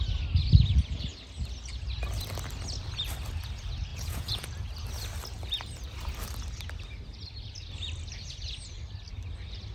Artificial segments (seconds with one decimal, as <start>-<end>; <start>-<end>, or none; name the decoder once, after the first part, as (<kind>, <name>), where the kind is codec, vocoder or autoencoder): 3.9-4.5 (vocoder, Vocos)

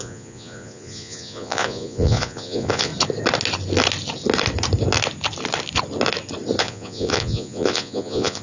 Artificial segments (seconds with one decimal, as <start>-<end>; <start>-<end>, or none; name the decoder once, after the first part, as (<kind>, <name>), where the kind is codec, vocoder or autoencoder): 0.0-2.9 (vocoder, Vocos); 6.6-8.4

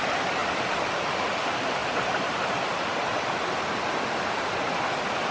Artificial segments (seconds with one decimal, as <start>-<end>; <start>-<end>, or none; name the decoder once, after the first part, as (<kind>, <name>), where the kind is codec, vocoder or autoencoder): none

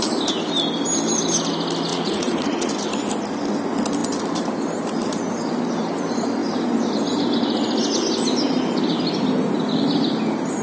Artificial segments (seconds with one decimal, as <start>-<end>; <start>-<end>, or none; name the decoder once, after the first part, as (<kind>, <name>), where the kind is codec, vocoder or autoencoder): 1.9-2.7 (vocoder, Vocos)